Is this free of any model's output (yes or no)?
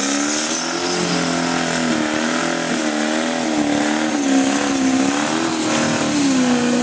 yes